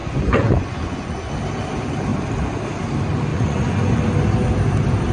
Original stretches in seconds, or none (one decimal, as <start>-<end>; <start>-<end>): 1.3-3.3; 4.0-5.1